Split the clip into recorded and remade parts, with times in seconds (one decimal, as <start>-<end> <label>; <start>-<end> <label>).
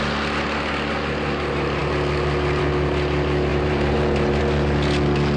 0.0-3.5 recorded; 3.5-4.4 remade; 4.4-5.4 recorded